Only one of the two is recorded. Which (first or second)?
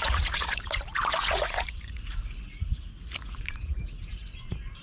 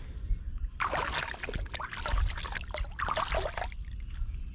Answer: second